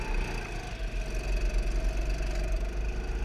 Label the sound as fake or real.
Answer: real